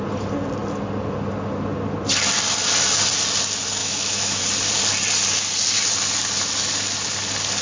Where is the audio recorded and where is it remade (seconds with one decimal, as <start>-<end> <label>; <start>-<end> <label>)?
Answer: 0.0-3.8 recorded; 3.8-4.4 remade; 4.4-7.6 recorded